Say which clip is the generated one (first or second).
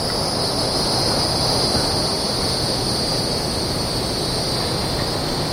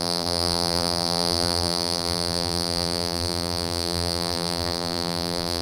second